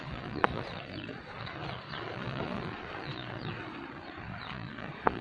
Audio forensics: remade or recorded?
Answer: remade